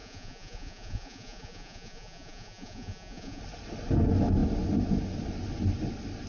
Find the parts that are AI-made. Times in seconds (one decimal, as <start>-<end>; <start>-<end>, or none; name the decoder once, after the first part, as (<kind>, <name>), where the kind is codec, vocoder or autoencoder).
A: 0.0-3.4 (vocoder, Vocos)